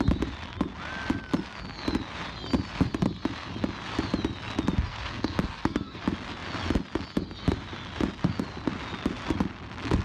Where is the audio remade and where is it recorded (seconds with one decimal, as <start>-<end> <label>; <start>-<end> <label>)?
0.0-4.9 recorded; 4.9-6.0 remade; 6.0-10.0 recorded